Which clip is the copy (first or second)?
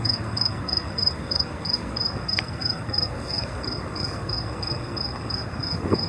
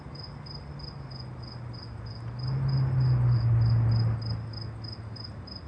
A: first